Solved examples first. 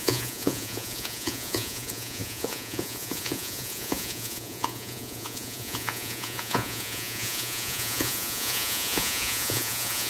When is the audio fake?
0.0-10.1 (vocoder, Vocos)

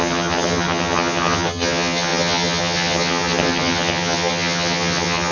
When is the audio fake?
0.0-5.3 (vocoder, HiFi-GAN)

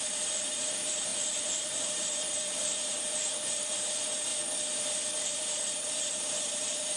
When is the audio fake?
0.0-4.3 (vocoder, BigVGAN v2); 5.2-7.0

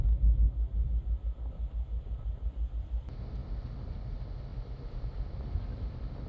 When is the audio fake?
none

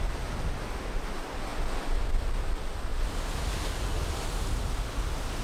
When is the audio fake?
none

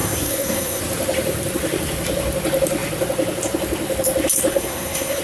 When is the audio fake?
0.0-0.8 (codec, SNAC); 4.5-5.2

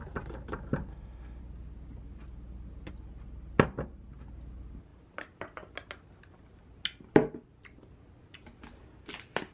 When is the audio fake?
0.9-1.4 (autoencoder, DAC-VAE)

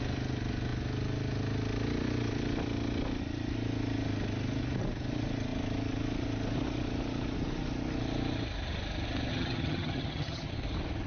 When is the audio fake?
9.3-10.5 (vocoder, HiFi-GAN)